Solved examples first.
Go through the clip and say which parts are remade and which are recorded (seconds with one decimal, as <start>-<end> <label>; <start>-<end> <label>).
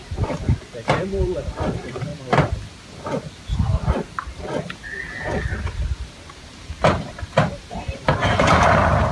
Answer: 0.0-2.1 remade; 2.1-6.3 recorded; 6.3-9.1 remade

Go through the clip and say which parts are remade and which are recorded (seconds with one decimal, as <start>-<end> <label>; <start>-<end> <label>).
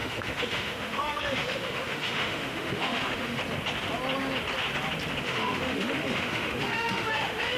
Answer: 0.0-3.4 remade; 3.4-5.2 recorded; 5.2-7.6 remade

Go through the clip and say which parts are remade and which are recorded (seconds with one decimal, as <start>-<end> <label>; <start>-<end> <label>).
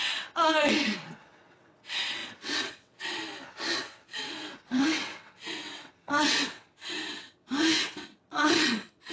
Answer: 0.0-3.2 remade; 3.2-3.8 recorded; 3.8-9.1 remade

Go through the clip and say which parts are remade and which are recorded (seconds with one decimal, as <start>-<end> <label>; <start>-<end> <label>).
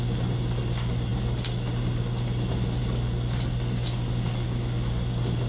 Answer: 0.0-5.5 recorded